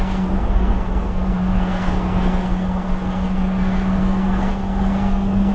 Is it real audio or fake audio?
fake